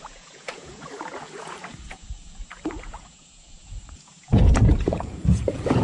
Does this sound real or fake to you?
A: fake